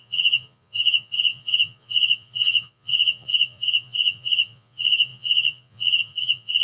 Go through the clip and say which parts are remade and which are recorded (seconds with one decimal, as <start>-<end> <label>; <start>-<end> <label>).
0.0-6.6 remade